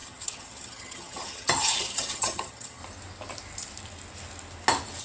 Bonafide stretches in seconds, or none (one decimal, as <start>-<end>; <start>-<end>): 2.8-5.0